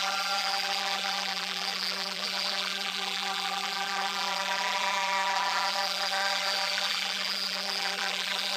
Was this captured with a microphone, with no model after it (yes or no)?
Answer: no